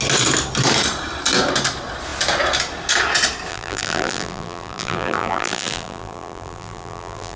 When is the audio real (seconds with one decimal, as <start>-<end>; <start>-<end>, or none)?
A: 0.0-3.5